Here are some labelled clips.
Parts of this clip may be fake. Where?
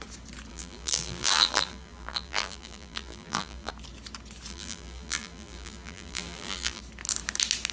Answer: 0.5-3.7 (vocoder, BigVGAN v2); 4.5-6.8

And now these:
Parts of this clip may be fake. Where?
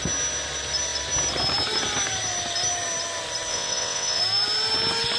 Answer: 3.5-4.2 (vocoder, WaveNeXt)